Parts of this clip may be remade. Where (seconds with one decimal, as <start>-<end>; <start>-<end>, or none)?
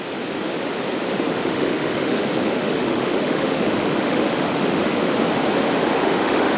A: 1.1-5.1; 5.8-6.6